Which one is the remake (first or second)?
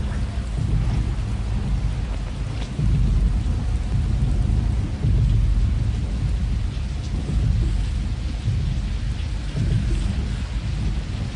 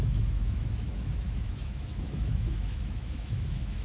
second